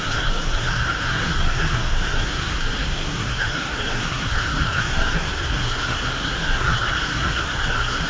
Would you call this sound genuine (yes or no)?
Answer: no